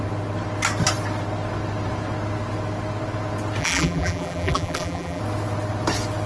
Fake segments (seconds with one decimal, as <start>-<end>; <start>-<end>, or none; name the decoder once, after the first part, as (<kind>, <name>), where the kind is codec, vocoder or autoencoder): 3.6-5.2 (vocoder, BigVGAN v2)